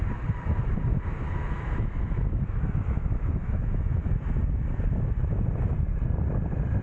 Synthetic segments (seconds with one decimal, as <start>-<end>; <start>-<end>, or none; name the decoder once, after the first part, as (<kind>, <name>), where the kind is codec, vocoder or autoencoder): 0.9-4.1 (autoencoder, DAC-VAE)